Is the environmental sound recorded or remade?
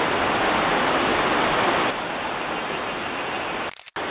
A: recorded